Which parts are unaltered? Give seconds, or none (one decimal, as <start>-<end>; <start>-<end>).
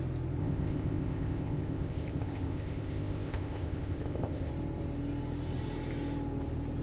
0.0-0.4; 4.5-6.8